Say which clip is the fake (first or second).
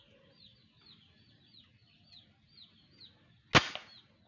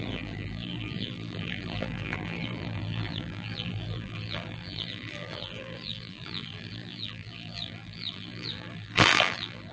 second